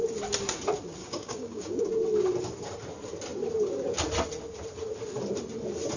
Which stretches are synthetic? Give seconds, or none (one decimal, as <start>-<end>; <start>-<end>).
1.0-1.8